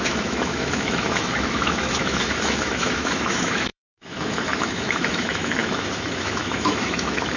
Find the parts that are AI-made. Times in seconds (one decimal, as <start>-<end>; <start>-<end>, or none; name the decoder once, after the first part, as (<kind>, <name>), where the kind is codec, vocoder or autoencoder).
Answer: 0.0-7.4 (autoencoder, DAC-VAE)